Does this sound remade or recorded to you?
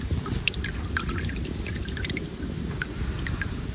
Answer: recorded